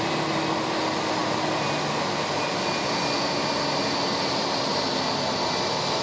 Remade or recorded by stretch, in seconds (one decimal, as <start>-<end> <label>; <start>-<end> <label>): 0.0-6.0 recorded